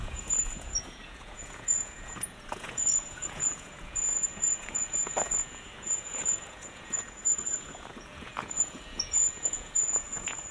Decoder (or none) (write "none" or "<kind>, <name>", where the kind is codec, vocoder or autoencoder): vocoder, Vocos